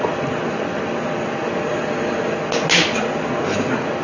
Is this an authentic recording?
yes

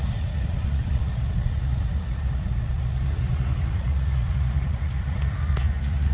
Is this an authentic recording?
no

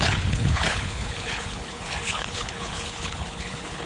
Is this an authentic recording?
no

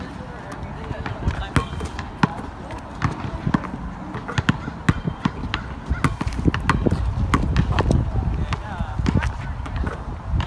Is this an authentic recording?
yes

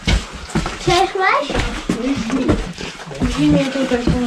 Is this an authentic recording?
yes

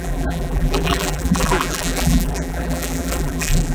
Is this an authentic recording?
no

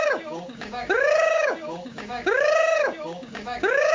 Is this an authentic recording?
no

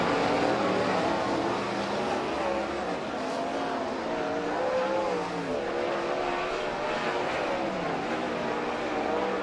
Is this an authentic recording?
yes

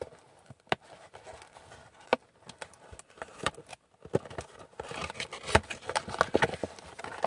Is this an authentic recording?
yes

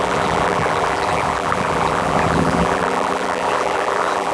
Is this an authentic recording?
no